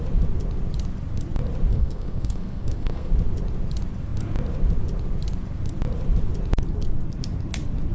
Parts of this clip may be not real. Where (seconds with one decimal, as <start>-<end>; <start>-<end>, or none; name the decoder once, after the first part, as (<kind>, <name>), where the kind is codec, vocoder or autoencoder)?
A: 1.7-3.1 (codec, SNAC)

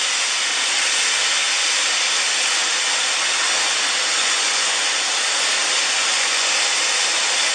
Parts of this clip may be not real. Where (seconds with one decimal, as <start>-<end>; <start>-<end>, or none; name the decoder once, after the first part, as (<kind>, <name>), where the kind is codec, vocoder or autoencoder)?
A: 4.2-4.8 (vocoder, Vocos); 6.0-6.5